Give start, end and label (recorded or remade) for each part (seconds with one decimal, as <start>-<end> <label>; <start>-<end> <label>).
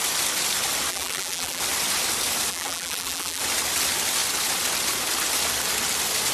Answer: 0.0-0.9 recorded; 0.9-1.6 remade; 1.6-2.5 recorded; 2.5-3.4 remade; 3.4-6.3 recorded